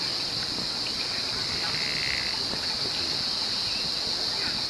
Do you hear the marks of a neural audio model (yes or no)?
no